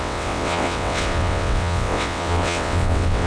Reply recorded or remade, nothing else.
remade